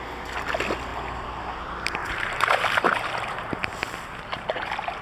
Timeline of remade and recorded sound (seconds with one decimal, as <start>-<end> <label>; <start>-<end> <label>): 0.0-0.9 recorded; 0.9-1.4 remade; 1.4-2.0 recorded; 2.0-5.0 remade